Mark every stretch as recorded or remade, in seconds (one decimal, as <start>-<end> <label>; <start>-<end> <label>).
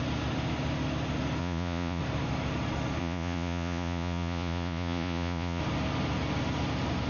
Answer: 0.0-1.4 recorded; 1.4-2.0 remade; 2.0-3.0 recorded; 3.0-5.6 remade; 5.6-7.1 recorded